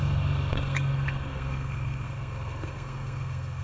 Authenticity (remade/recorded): remade